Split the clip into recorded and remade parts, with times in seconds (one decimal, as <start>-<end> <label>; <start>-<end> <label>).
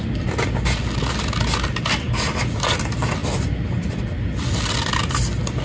0.0-5.6 recorded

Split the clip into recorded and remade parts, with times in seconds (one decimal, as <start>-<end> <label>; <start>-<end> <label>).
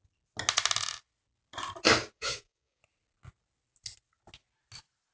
0.0-2.0 recorded; 2.0-2.8 remade; 2.8-5.1 recorded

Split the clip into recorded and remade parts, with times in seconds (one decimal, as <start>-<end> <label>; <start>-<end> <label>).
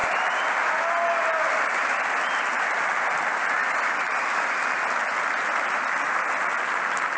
0.0-7.2 recorded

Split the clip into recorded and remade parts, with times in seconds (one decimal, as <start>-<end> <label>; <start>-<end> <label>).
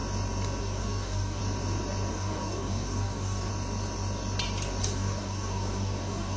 0.0-0.6 recorded; 0.6-1.4 remade; 1.4-2.1 recorded; 2.1-3.5 remade; 3.5-4.8 recorded; 4.8-6.4 remade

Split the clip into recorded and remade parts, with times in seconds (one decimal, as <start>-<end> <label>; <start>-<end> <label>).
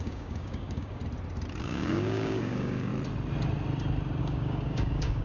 0.0-1.0 remade; 1.0-1.6 recorded; 1.6-2.9 remade; 2.9-4.2 recorded; 4.2-5.2 remade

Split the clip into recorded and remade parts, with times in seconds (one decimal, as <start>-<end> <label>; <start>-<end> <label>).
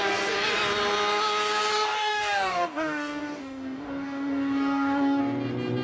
0.0-1.7 recorded; 1.7-5.2 remade; 5.2-5.8 recorded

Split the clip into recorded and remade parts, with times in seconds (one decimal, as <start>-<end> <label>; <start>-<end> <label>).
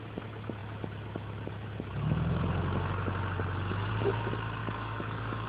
0.0-4.6 recorded; 4.6-5.5 remade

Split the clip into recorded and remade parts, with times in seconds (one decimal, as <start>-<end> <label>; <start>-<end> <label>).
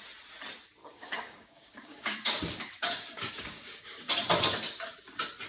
0.0-0.8 recorded; 0.8-4.1 remade; 4.1-5.5 recorded